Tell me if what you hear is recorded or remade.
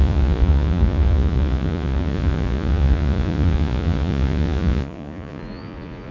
remade